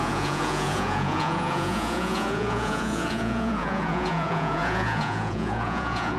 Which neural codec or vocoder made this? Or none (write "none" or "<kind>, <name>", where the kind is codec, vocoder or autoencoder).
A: vocoder, Vocos